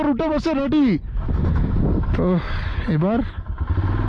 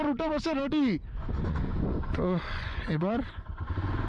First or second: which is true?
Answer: first